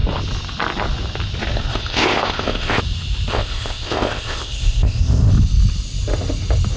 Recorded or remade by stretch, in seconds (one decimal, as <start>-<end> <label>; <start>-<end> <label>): 0.0-1.7 recorded; 1.7-2.8 remade; 2.8-3.3 recorded; 3.3-5.3 remade; 5.3-6.8 recorded